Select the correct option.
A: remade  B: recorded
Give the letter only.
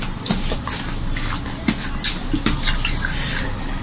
B